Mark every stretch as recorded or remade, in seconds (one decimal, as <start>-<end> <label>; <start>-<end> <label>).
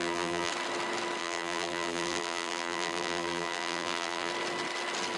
0.0-0.5 remade; 0.5-1.2 recorded; 1.2-4.3 remade; 4.3-5.2 recorded